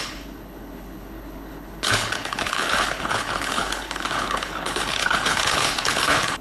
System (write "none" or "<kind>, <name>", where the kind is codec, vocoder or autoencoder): codec, HILCodec